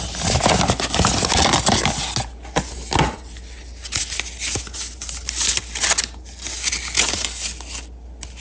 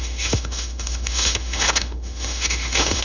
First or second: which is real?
first